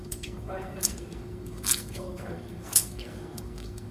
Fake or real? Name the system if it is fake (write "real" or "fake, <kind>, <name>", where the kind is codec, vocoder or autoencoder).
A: fake, codec, SNAC